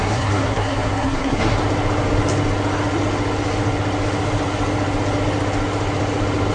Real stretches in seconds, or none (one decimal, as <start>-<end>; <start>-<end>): 1.6-6.5